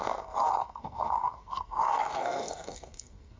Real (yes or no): no